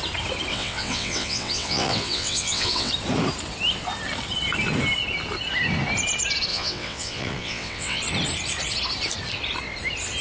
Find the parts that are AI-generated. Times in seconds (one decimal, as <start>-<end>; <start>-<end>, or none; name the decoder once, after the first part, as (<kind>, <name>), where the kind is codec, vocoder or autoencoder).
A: 0.5-2.9 (vocoder, WaveNeXt); 6.5-8.0